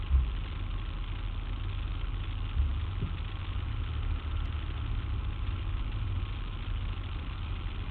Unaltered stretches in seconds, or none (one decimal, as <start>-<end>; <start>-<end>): 0.0-7.9